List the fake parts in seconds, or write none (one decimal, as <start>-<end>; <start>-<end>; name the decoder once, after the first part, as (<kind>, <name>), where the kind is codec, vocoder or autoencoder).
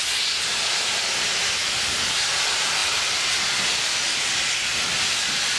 none